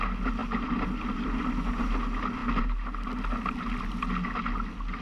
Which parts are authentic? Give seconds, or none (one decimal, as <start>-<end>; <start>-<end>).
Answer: 0.0-0.4; 1.7-5.0